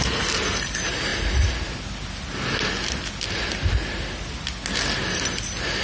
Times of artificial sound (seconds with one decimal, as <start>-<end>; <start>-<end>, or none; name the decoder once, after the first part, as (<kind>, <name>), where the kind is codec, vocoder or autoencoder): none